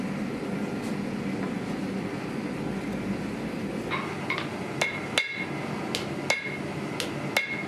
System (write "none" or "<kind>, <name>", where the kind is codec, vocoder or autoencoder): none